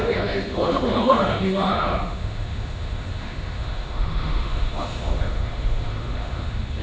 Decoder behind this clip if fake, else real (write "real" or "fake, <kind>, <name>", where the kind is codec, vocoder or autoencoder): fake, autoencoder, DAC-VAE